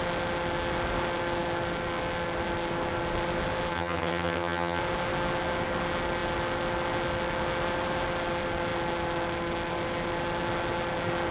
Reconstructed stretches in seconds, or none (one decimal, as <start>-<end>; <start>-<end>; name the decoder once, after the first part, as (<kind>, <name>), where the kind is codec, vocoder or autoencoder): 3.7-4.8 (vocoder, HiFi-GAN)